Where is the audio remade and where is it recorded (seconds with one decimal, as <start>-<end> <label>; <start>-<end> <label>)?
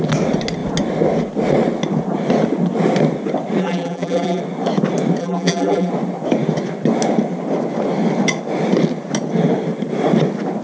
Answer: 0.0-3.6 recorded; 3.6-4.4 remade; 4.4-5.2 recorded; 5.2-5.9 remade; 5.9-10.6 recorded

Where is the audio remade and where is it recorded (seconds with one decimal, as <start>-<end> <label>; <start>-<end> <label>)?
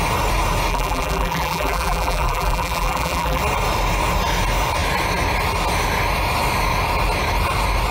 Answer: 0.0-0.7 recorded; 0.7-3.4 remade; 3.4-7.9 recorded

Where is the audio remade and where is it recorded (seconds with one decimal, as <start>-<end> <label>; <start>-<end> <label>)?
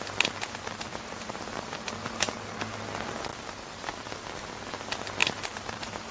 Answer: 0.0-0.9 recorded; 0.9-1.7 remade; 1.7-5.2 recorded; 5.2-6.1 remade